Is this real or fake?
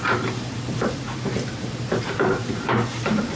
fake